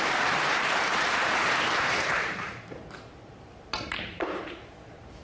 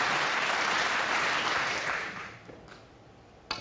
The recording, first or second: second